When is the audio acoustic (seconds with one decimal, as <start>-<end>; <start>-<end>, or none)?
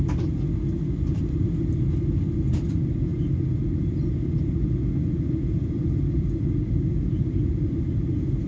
0.0-8.5